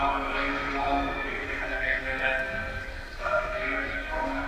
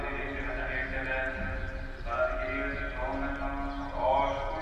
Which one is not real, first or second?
first